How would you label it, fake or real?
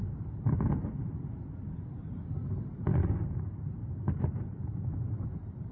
real